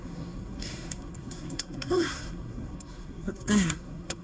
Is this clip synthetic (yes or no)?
yes